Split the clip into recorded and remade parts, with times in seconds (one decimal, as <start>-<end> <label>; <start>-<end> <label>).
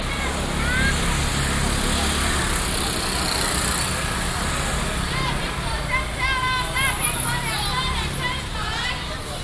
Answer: 0.0-8.5 recorded; 8.5-9.4 remade